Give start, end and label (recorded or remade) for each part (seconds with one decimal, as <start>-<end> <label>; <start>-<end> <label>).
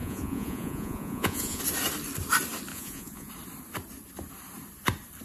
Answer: 0.0-1.6 remade; 1.6-2.7 recorded; 2.7-3.3 remade; 3.3-5.2 recorded